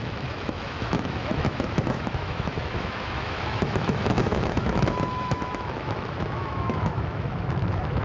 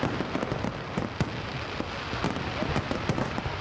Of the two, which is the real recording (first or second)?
second